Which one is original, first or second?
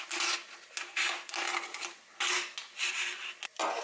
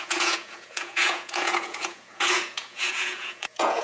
first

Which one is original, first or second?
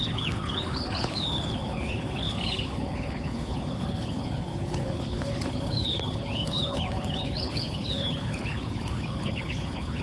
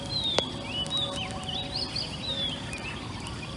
second